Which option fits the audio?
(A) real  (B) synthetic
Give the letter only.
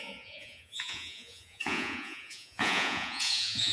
B